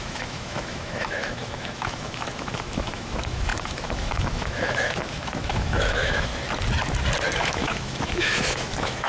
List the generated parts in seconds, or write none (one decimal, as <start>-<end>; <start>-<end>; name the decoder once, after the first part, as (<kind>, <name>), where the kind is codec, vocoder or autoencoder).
0.0-6.3 (autoencoder, DAC-VAE); 7.4-9.1